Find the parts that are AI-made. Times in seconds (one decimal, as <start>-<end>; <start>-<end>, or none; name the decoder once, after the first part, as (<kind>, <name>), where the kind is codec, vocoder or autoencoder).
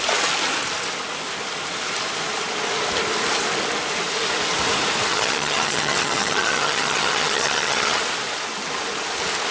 5.1-8.0 (vocoder, HiFi-GAN)